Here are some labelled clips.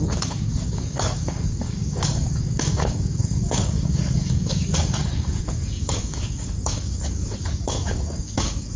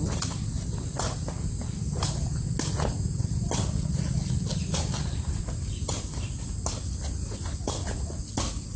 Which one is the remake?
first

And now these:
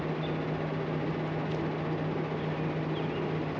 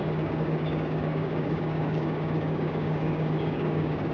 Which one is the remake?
second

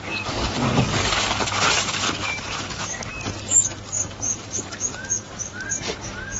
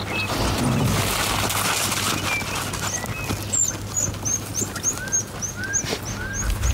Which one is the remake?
first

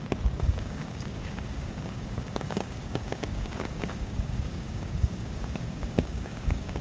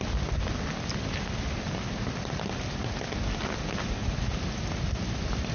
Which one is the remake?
first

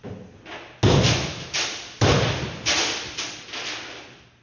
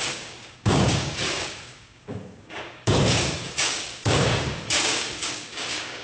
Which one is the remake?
second